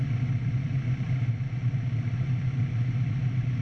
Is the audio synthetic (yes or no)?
no